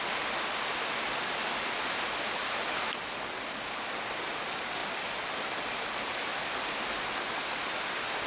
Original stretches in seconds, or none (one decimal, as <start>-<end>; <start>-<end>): 0.0-4.8; 6.4-8.3